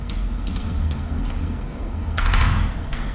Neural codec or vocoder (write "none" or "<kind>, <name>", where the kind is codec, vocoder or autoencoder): codec, SNAC